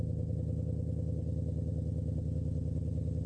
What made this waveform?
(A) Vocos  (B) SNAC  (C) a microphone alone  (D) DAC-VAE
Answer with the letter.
C